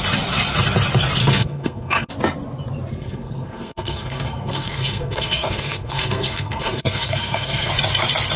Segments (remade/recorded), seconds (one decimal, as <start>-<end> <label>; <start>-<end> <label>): 0.0-1.2 recorded; 1.2-2.1 remade; 2.1-2.9 recorded; 2.9-7.7 remade; 7.7-8.4 recorded